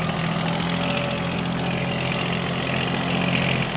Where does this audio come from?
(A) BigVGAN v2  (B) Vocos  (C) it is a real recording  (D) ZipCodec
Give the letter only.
C